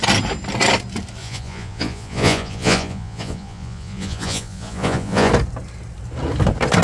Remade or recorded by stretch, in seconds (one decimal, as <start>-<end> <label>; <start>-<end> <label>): 0.0-1.2 recorded; 1.2-5.3 remade; 5.3-6.8 recorded